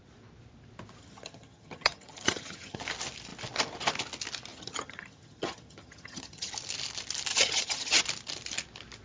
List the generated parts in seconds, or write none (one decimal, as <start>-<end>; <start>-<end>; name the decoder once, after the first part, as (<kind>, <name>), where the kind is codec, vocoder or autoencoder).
1.0-2.8 (vocoder, HiFi-GAN); 4.5-6.5; 7.3-8.0